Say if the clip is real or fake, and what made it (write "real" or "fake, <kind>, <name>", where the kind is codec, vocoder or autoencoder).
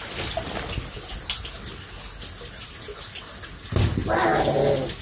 real